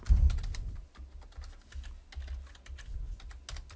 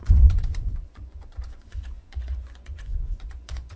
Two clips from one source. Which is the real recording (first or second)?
first